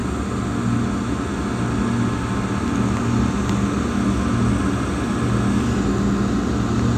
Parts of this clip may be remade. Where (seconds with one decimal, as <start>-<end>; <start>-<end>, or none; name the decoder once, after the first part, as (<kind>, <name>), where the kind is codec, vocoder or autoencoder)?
none